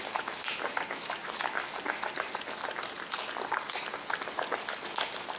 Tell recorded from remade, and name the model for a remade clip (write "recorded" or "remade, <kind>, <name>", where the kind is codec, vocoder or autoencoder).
recorded